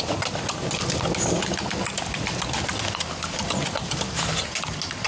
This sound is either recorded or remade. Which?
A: recorded